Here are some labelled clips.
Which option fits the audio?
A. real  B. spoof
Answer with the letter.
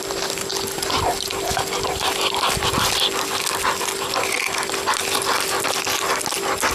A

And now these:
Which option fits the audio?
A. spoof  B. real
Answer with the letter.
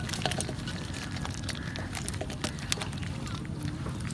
B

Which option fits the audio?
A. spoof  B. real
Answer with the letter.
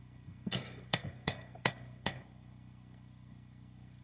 A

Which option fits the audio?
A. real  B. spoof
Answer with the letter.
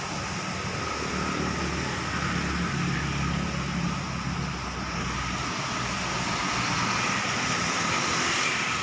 A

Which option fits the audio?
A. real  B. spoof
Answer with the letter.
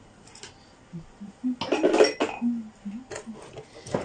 A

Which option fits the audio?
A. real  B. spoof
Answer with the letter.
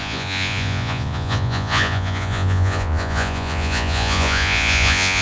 B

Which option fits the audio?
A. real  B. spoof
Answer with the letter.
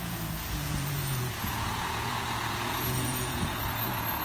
B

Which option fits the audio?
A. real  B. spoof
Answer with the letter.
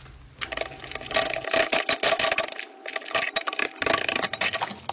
A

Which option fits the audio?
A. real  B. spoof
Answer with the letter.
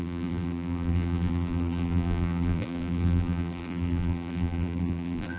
B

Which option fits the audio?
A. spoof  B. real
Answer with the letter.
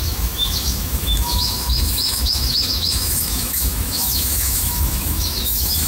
A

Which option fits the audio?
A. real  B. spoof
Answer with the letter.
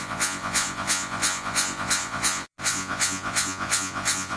B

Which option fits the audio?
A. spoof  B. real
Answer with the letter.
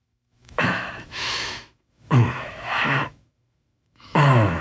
A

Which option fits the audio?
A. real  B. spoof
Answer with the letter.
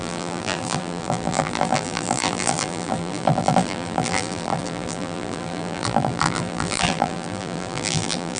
B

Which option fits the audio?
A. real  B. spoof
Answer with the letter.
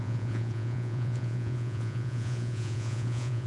B